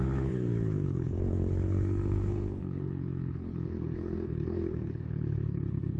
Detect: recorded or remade remade